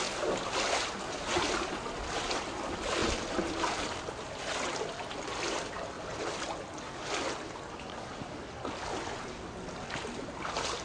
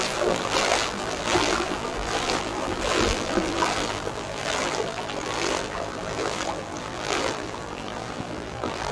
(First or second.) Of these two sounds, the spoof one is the second